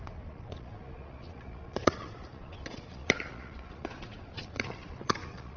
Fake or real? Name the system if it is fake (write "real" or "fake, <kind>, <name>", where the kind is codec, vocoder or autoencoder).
fake, vocoder, Vocos